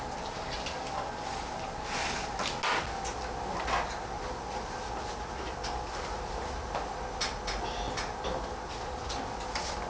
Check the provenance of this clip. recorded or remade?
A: recorded